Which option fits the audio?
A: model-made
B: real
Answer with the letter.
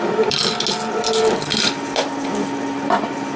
B